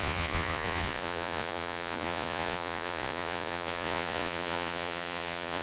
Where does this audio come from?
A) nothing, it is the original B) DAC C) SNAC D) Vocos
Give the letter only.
D